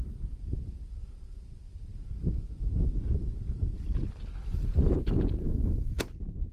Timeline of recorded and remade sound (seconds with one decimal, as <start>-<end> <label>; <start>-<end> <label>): 0.0-5.4 recorded; 5.4-6.0 remade; 6.0-6.5 recorded